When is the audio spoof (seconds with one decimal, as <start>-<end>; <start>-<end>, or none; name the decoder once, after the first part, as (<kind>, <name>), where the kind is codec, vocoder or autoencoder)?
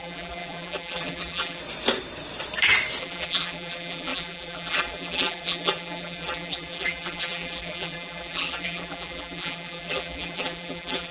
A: 0.0-1.6 (vocoder, BigVGAN v2); 3.0-11.1